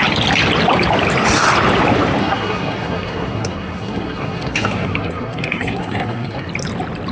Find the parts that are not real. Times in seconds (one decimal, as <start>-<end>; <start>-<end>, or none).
2.2-6.5